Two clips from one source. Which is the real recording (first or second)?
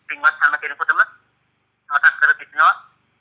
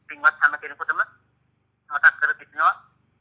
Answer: first